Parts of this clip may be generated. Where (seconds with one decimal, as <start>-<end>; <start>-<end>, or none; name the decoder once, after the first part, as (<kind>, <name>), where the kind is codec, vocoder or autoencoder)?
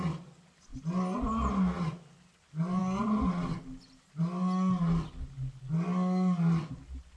none